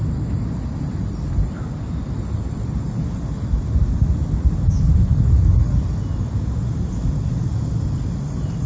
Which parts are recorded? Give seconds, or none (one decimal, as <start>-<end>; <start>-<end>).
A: 0.0-8.7